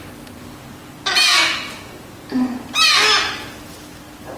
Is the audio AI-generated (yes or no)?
no